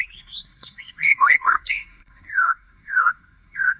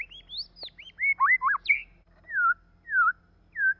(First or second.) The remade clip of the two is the first